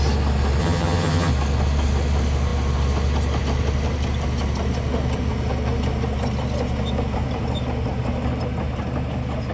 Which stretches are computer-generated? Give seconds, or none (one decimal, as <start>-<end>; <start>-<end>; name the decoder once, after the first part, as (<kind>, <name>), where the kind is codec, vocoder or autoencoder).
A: 0.6-1.3 (vocoder, HiFi-GAN)